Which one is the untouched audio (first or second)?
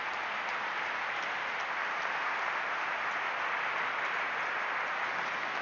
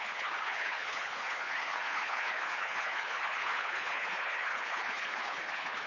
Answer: first